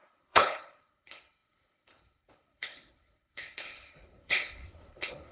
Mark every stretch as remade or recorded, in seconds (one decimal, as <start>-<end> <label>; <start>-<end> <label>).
0.0-5.3 remade